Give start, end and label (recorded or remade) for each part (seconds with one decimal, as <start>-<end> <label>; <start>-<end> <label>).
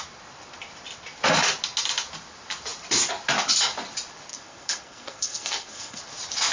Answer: 0.0-4.3 recorded; 4.3-6.0 remade; 6.0-6.5 recorded